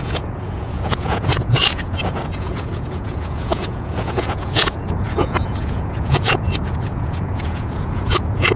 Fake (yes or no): yes